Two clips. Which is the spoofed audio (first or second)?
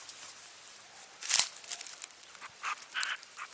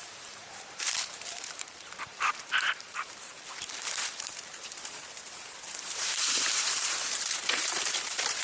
second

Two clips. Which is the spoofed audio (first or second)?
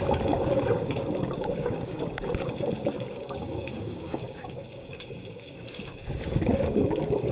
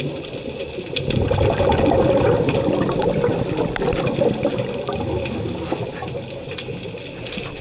first